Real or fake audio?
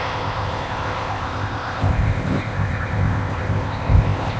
fake